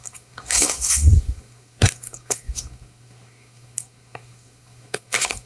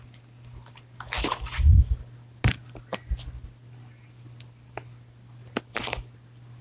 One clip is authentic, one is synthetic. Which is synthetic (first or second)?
first